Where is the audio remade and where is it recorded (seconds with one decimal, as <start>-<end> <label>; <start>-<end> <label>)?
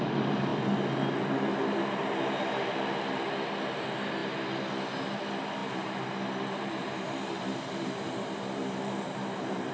0.0-5.6 recorded; 5.6-9.7 remade